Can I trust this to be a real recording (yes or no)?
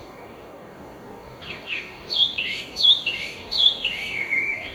no